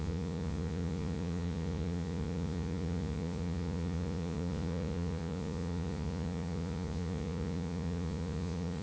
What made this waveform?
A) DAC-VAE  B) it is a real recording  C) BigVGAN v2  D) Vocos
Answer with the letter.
D